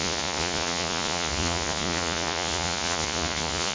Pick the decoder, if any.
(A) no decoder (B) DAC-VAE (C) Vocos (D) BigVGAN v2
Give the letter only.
C